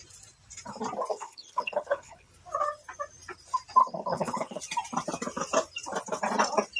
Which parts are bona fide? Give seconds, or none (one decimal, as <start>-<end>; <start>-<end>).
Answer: 0.0-1.1; 2.3-3.8; 4.6-6.8